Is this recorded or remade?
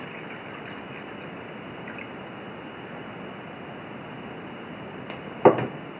recorded